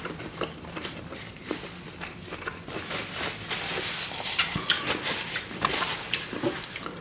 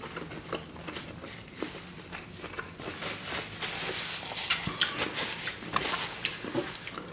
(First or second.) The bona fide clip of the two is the second